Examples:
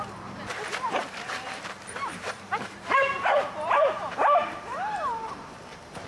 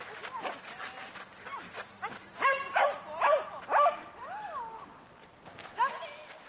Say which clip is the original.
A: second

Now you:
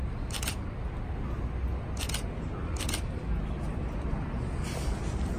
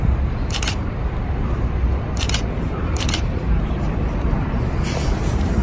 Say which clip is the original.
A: first